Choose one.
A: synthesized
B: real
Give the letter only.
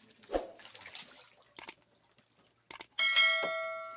B